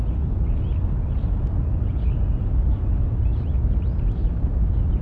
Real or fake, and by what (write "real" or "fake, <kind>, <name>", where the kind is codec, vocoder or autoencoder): real